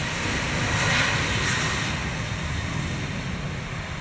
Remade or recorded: recorded